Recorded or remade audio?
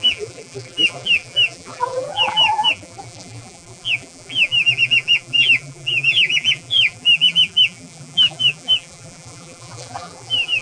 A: remade